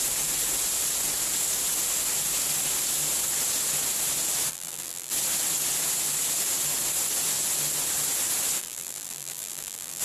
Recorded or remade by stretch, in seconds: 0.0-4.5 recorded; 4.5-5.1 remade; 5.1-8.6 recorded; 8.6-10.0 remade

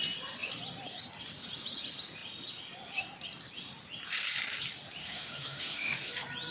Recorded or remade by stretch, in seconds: 0.0-5.0 recorded; 5.0-6.1 remade; 6.1-6.5 recorded

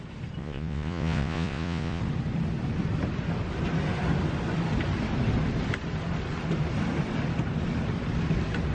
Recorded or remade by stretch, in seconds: 0.0-0.4 recorded; 0.4-2.0 remade; 2.0-8.7 recorded

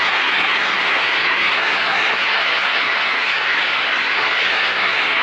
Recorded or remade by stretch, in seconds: 0.0-5.2 remade